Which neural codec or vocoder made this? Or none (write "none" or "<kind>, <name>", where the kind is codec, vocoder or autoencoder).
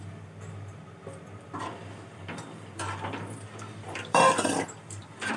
vocoder, BigVGAN v2